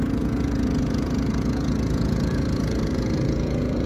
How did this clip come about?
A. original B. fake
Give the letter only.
B